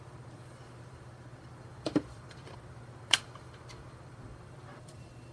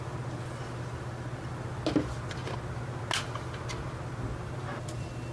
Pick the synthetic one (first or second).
first